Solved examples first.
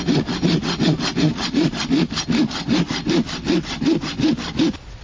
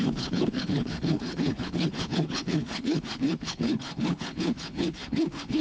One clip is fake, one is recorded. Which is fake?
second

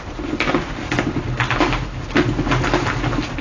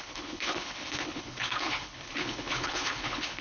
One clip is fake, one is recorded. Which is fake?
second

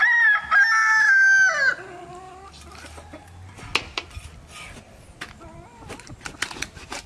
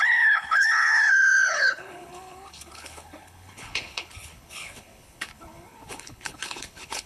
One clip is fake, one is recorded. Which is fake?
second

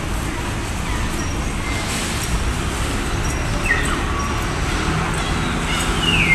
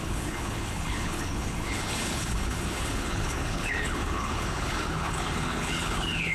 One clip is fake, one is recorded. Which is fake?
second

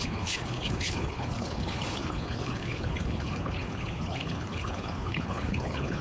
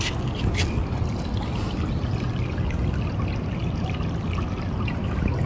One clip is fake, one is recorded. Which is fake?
first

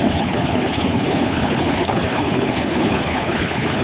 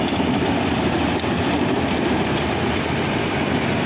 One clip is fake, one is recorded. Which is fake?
first